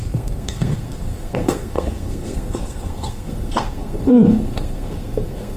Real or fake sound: fake